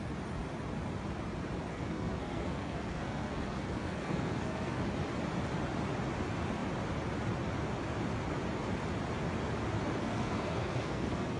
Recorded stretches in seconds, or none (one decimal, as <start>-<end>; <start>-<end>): 0.0-1.7; 4.8-10.0